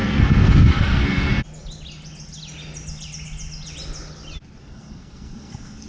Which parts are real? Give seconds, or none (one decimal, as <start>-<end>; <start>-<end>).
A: 1.3-4.6